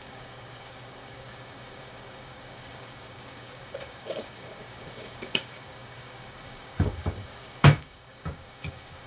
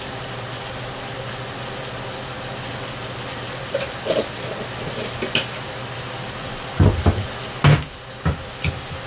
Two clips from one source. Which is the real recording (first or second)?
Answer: second